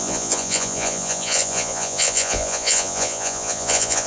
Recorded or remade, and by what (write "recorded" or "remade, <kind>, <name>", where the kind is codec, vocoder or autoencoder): remade, vocoder, Vocos